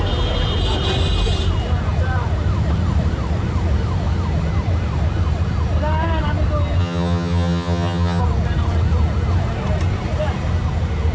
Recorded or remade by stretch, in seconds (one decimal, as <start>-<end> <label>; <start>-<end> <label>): 0.0-6.8 recorded; 6.8-8.2 remade; 8.2-11.1 recorded